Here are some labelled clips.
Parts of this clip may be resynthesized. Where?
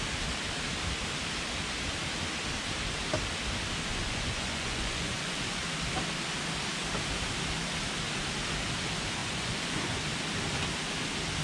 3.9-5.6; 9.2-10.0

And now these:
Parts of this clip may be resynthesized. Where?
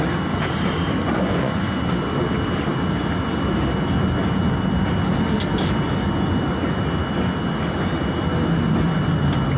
1.0-1.6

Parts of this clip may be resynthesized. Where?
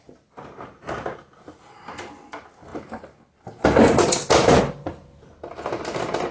none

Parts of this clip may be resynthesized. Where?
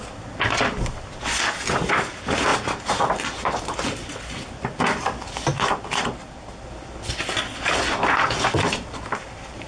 none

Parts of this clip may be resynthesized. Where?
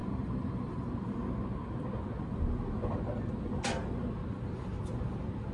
0.0-0.9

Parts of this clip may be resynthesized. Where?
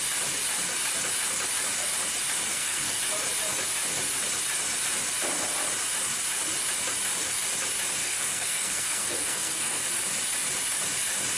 2.5-3.0; 8.0-9.9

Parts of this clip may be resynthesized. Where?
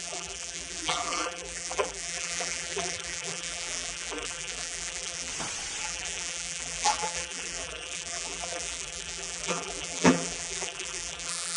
0.0-5.3; 5.8-11.6